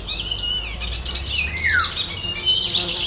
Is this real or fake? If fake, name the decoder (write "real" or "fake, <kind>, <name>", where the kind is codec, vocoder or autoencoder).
real